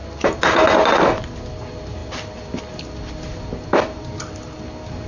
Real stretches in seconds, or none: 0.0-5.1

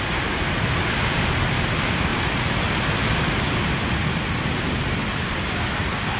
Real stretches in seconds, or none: 0.0-6.2

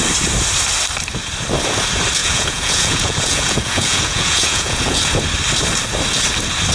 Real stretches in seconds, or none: 0.0-2.2; 5.0-6.7

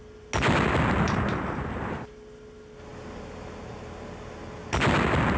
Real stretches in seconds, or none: 0.0-5.4

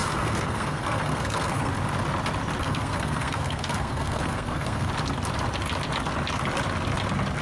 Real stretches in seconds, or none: 1.7-2.6; 4.9-7.4

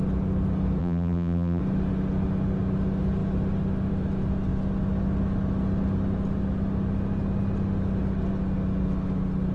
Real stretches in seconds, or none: 0.0-0.8; 1.6-9.5

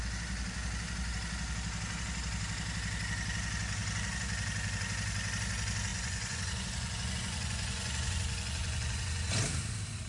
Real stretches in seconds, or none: 0.0-5.9; 9.3-10.1